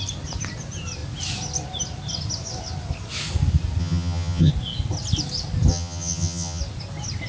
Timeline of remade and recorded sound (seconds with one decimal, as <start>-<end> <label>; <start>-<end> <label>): 0.0-3.8 recorded; 3.8-4.5 remade; 4.5-5.7 recorded; 5.7-6.6 remade; 6.6-7.3 recorded

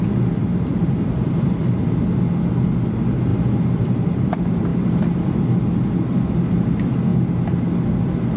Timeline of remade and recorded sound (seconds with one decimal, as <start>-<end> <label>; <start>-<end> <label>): 0.0-0.4 recorded; 0.4-1.9 remade; 1.9-3.3 recorded; 3.3-4.3 remade; 4.3-8.4 recorded

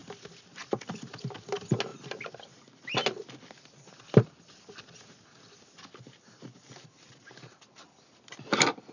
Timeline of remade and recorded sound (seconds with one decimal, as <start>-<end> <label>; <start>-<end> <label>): 0.0-8.9 recorded

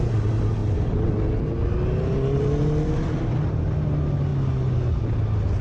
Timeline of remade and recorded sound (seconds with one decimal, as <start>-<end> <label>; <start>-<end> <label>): 0.0-5.6 recorded